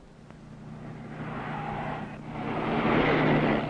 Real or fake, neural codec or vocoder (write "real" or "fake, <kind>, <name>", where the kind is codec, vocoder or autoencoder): real